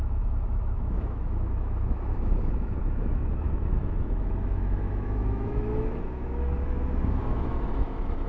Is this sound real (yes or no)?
no